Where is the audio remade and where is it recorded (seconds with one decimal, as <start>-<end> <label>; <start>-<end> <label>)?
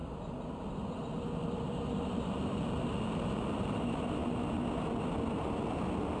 0.0-1.2 recorded; 1.2-4.2 remade; 4.2-6.2 recorded